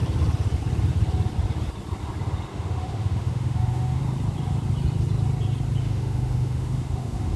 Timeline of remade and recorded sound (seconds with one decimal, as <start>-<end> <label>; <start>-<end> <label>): 0.0-2.5 recorded; 2.5-4.0 remade; 4.0-5.8 recorded; 5.8-7.4 remade